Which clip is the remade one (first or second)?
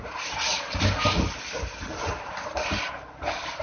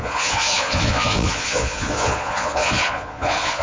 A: second